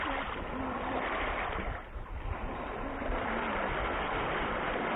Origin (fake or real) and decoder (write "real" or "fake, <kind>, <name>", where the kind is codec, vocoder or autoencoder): real